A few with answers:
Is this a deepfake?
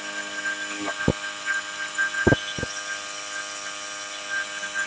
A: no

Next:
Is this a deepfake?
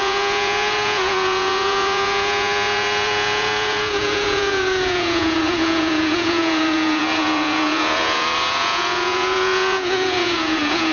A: yes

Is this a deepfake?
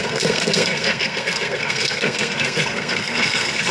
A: yes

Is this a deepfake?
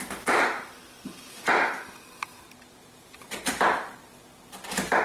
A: no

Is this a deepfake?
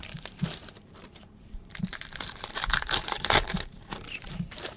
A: yes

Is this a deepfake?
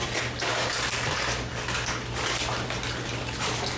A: no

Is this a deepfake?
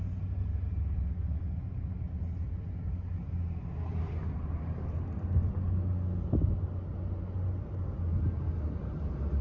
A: no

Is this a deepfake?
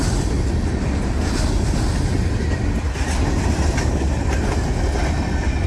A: no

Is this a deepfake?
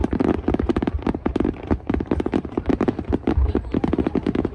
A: yes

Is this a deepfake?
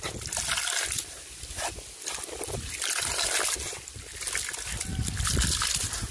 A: no